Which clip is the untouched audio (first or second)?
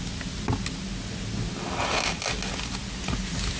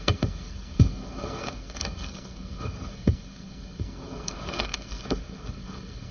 first